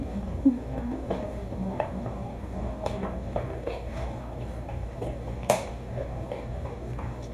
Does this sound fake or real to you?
fake